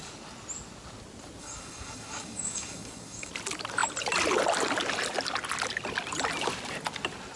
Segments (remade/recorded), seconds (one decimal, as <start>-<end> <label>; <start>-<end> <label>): 0.0-1.4 recorded; 1.4-3.3 remade; 3.3-7.4 recorded